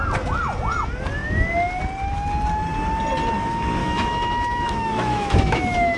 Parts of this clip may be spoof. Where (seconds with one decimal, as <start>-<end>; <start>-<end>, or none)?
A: 3.8-6.0